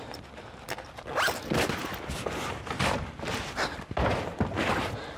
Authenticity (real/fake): real